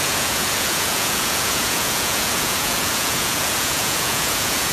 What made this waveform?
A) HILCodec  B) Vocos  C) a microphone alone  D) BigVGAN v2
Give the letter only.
B